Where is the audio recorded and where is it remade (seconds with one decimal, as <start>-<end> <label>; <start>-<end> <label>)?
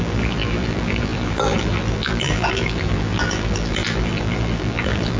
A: 0.0-5.2 remade